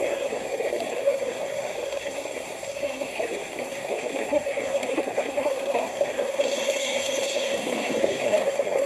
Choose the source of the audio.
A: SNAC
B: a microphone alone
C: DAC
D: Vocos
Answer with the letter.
A